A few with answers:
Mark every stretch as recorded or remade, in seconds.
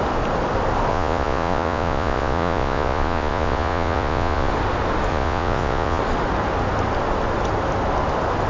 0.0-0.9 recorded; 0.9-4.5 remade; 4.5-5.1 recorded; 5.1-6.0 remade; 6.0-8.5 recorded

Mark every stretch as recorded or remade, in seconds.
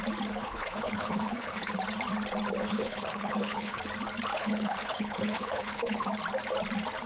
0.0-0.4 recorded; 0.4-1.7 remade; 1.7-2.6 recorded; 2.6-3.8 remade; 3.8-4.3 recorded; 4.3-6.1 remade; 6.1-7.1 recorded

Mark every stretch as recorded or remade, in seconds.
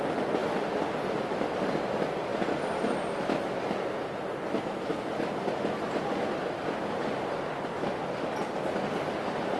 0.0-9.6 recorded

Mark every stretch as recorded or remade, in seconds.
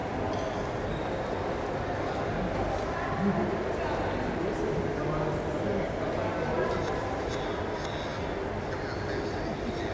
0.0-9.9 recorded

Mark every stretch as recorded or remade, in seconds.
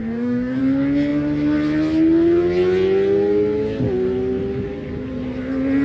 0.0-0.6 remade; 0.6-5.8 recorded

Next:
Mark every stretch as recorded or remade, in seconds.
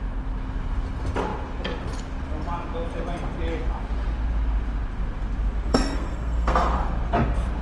0.0-5.7 recorded; 5.7-6.9 remade; 6.9-7.6 recorded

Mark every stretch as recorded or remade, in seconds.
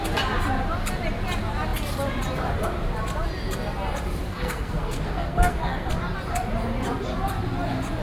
0.0-4.3 recorded; 4.3-5.9 remade; 5.9-8.0 recorded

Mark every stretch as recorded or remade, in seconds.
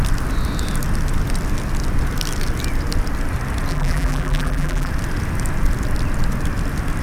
0.0-3.7 recorded; 3.7-4.9 remade; 4.9-7.0 recorded